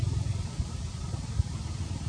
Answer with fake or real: fake